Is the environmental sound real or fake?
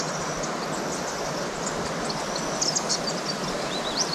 real